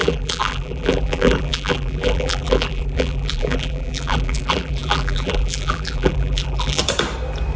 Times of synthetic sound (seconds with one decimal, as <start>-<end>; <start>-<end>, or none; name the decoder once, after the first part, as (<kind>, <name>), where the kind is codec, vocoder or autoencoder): 0.0-6.8 (vocoder, BigVGAN v2)